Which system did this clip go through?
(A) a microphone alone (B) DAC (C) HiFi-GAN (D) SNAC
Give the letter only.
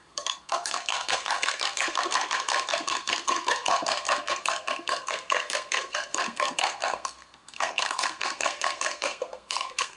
D